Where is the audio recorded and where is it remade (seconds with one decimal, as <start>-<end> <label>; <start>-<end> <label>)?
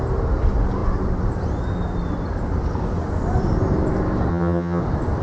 0.0-4.3 recorded; 4.3-4.8 remade; 4.8-5.2 recorded